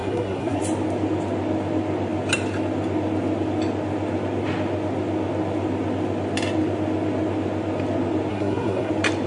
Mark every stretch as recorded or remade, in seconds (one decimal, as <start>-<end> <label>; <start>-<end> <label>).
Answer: 0.0-0.6 remade; 0.6-8.3 recorded; 8.3-8.9 remade; 8.9-9.3 recorded